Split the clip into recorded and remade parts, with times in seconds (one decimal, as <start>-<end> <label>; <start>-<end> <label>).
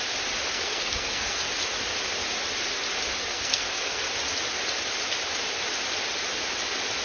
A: 0.0-0.5 recorded; 0.5-1.5 remade; 1.5-3.2 recorded; 3.2-4.1 remade; 4.1-7.0 recorded